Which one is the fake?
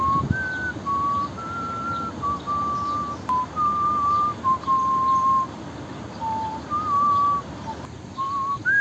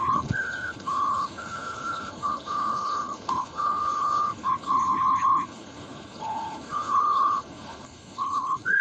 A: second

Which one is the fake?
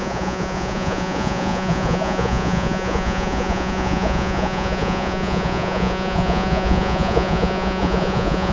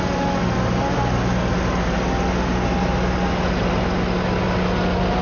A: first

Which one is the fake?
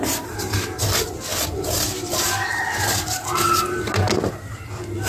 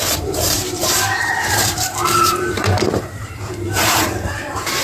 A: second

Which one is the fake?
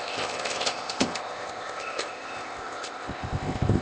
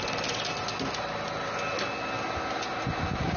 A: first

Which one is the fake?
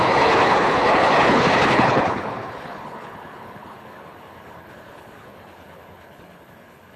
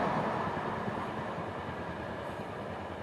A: first